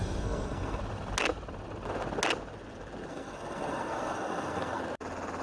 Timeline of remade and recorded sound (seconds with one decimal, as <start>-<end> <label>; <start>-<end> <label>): 0.0-0.8 remade; 0.8-3.1 recorded; 3.1-4.8 remade; 4.8-5.4 recorded